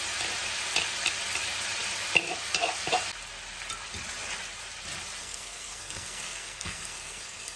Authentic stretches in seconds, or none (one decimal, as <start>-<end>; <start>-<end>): 0.0-5.2